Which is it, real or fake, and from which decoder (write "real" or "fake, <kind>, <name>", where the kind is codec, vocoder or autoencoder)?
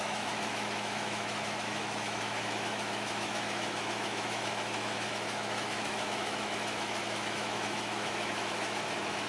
fake, autoencoder, DAC-VAE